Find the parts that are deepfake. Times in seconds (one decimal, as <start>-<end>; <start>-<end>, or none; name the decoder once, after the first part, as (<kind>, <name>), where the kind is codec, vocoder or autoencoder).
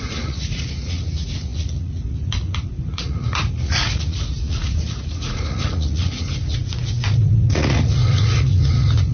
0.0-9.1 (vocoder, Vocos)